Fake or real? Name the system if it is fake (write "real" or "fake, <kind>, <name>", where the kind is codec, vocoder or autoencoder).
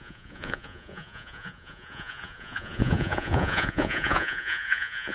fake, vocoder, Vocos